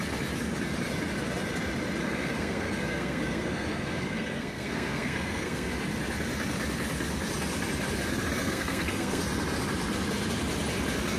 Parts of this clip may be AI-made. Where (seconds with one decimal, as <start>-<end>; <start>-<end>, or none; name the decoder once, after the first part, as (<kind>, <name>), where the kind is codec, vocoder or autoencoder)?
2.0-5.7 (codec, SNAC); 8.4-9.2